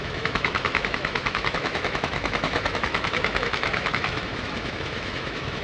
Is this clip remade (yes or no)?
yes